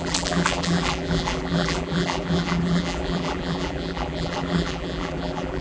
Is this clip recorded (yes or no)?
no